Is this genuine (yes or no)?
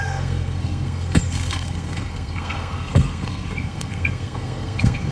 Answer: no